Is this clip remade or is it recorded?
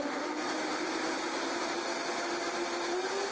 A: recorded